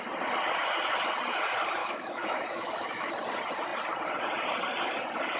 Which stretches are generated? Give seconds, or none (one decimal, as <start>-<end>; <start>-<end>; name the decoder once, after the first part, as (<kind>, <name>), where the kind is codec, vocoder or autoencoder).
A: 1.8-3.1 (autoencoder, DAC-VAE)